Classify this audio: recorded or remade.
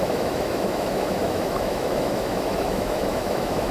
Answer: remade